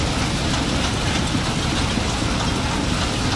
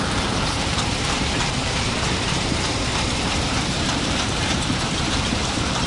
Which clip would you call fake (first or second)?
second